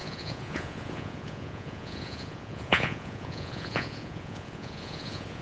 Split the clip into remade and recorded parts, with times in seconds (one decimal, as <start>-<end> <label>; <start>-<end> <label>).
0.0-5.4 remade